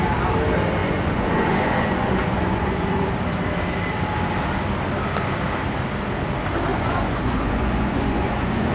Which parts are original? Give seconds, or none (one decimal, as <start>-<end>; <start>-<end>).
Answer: 0.0-0.8; 3.1-6.7